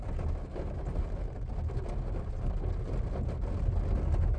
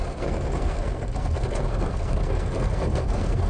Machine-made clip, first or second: second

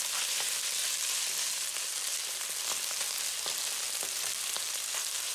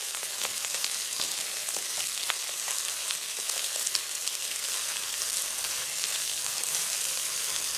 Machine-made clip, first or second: second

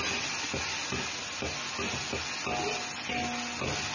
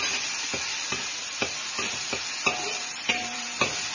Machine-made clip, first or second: second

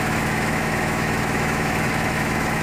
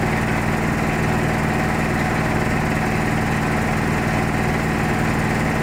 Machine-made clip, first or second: first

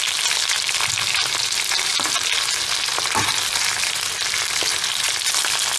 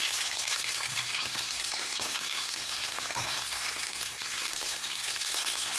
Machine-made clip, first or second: second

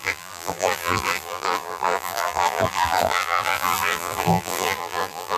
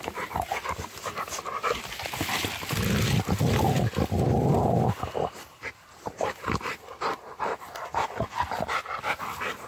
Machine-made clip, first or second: first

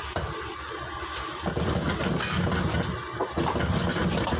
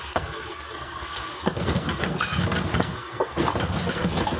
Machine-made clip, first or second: second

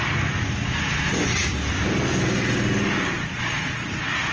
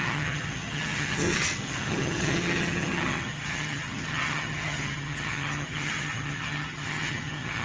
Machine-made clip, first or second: second